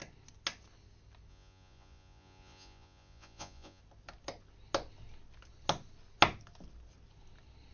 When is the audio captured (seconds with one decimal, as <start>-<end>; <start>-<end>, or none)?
0.0-1.3; 3.8-7.7